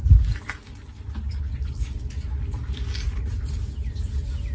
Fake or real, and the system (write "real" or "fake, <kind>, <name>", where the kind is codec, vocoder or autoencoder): real